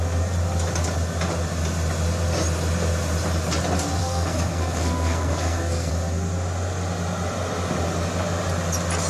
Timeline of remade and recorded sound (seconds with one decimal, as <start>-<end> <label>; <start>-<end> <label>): 0.0-4.0 recorded; 4.0-5.9 remade; 5.9-9.1 recorded